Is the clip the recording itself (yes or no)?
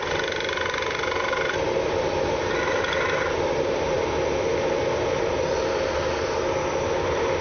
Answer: yes